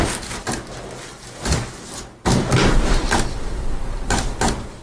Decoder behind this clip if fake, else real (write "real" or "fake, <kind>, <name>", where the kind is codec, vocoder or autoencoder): real